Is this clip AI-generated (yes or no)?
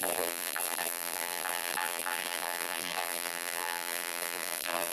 yes